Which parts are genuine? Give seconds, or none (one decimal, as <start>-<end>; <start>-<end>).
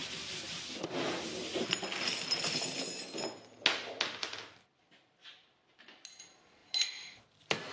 0.0-4.2; 4.8-7.7